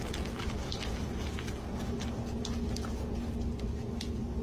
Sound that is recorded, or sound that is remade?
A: recorded